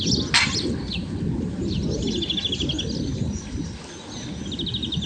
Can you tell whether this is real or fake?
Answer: real